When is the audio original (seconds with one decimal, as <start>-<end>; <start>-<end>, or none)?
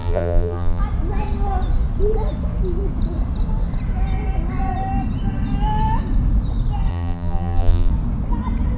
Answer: 0.8-6.9; 7.9-8.8